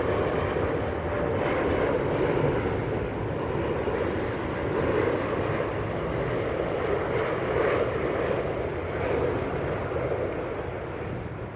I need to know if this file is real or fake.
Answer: real